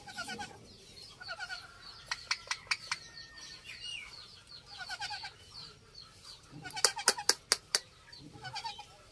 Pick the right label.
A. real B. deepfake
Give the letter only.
A